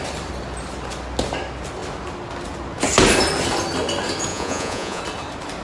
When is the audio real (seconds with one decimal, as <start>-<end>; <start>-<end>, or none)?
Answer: 0.0-4.3; 5.0-5.6